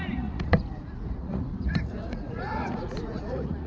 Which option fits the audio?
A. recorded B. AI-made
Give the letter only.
B